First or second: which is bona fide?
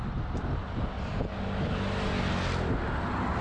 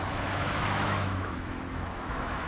first